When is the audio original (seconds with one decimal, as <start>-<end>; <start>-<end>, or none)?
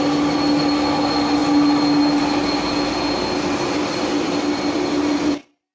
0.0-5.7